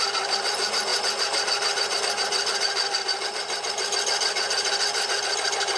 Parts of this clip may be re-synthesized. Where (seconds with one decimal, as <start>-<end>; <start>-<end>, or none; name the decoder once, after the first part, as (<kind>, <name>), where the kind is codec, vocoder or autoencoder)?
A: none